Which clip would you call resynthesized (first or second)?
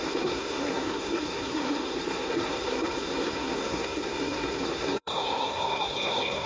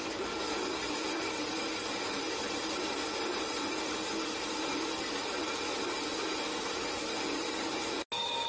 first